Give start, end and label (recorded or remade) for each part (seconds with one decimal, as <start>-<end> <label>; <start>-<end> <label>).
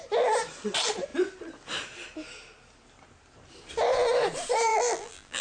0.0-4.7 recorded; 4.7-5.4 remade